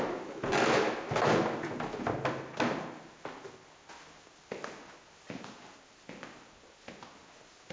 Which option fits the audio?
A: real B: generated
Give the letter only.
A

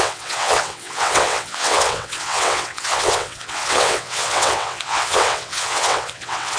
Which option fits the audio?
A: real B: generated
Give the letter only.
B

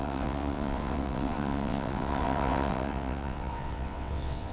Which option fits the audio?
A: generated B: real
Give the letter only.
A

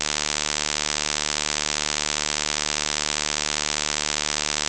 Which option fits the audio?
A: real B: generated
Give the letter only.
A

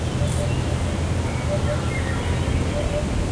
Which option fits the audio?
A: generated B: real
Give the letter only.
B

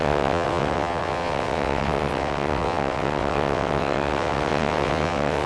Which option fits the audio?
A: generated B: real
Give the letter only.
A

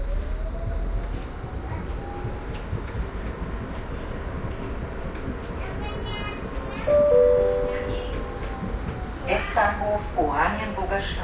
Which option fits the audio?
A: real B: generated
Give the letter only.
A